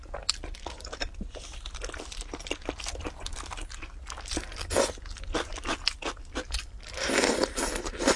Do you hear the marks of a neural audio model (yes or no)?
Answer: no